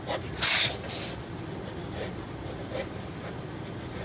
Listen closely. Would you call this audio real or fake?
real